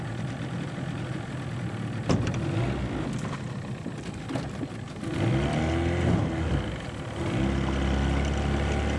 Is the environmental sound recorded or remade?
recorded